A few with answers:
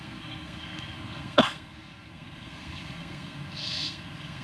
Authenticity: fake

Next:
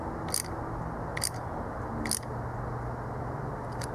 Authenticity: real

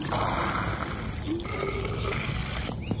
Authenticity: real